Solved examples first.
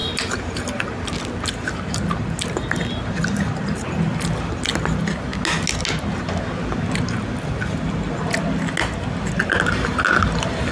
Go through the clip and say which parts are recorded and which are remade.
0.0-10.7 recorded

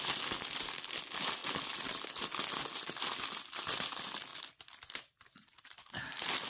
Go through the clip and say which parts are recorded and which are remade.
0.0-6.5 recorded